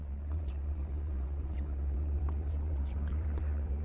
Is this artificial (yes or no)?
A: yes